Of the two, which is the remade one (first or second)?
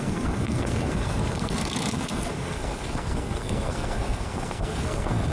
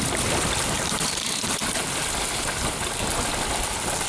first